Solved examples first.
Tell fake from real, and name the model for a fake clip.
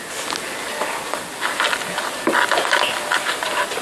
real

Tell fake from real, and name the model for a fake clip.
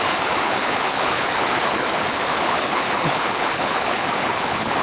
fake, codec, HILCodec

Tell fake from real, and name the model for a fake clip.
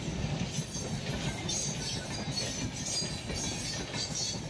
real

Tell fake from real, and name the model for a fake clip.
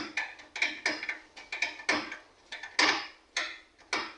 real